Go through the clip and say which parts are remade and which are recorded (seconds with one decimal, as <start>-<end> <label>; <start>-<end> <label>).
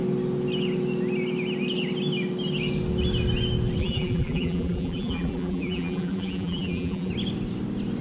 0.0-3.8 recorded; 3.8-7.1 remade; 7.1-8.0 recorded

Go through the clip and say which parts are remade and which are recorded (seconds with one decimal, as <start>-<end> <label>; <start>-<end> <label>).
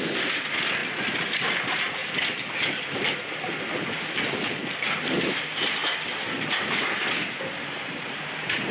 0.0-0.8 remade; 0.8-1.6 recorded; 1.6-2.0 remade; 2.0-5.2 recorded; 5.2-5.8 remade; 5.8-6.8 recorded; 6.8-8.7 remade